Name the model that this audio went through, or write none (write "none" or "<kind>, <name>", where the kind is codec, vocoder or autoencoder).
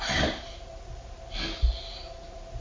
none